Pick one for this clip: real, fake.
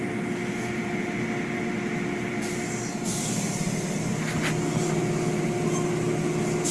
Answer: real